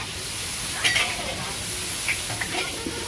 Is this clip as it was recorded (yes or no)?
yes